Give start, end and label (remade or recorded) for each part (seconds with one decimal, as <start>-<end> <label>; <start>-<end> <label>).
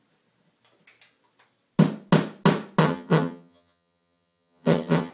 0.0-2.8 recorded; 2.8-5.1 remade